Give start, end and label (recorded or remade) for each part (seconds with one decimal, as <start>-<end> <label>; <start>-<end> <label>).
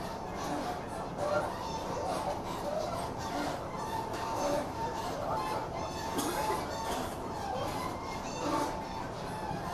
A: 0.0-2.7 recorded; 2.7-5.0 remade; 5.0-7.1 recorded; 7.1-8.1 remade; 8.1-9.7 recorded